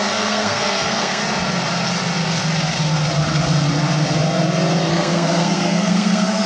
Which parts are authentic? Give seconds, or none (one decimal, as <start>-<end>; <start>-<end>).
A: 1.2-4.9